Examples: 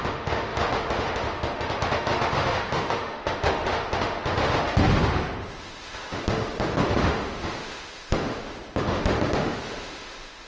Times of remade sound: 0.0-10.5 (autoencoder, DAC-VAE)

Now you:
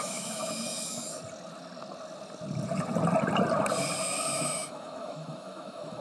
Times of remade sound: 0.0-1.2 (autoencoder, DAC-VAE); 4.0-6.0

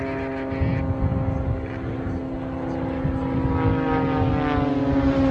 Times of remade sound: none

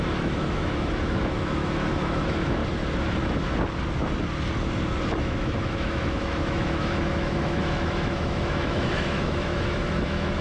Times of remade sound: 0.0-2.6 (autoencoder, DAC-VAE); 5.2-10.4

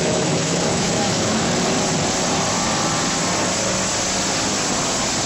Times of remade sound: 0.0-1.5 (autoencoder, DAC-VAE)

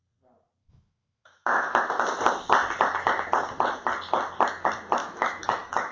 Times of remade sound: 0.6-1.8 (autoencoder, DAC-VAE); 5.0-5.9